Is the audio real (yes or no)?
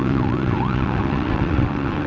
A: no